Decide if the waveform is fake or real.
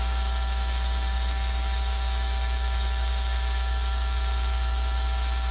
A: fake